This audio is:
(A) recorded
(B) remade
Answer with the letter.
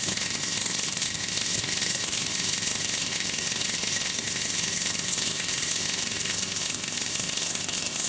B